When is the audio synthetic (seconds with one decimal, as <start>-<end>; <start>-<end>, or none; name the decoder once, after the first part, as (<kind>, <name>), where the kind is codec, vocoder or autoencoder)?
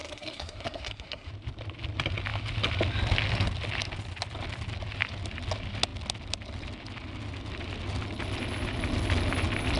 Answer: 0.0-1.3 (codec, SNAC)